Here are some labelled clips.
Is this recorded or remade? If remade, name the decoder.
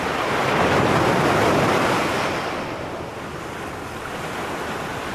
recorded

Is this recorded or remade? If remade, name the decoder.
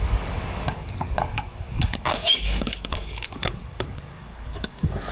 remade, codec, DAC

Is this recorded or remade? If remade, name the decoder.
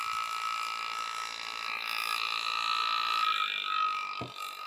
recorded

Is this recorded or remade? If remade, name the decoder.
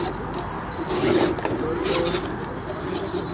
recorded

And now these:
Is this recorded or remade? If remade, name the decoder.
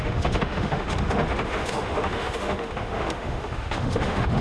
remade, autoencoder, DAC-VAE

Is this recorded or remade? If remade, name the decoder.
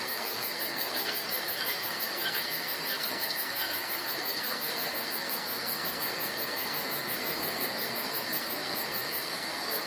remade, codec, SNAC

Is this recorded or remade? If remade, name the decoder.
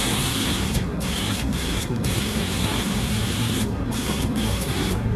remade, codec, SNAC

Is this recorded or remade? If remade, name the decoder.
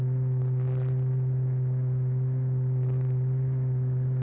recorded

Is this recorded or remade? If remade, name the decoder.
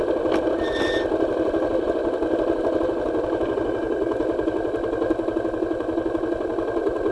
recorded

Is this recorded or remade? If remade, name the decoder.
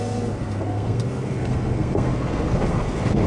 remade, codec, SNAC